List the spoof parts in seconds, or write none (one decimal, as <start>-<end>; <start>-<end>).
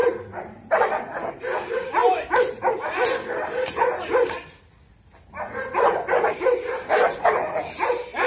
none